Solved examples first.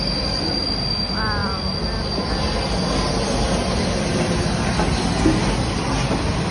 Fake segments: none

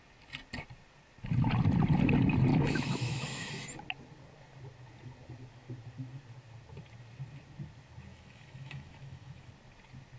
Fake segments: 2.5-3.5; 8.1-9.5

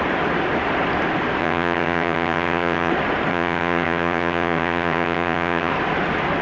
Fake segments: 1.4-2.9; 3.3-5.7

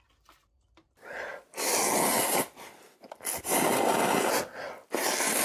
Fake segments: none

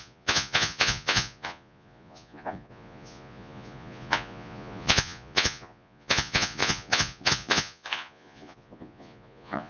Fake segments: 0.0-9.7

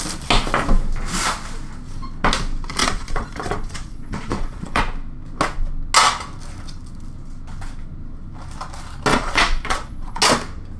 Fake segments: 2.8-4.8; 9.1-10.2